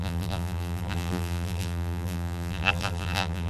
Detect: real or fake fake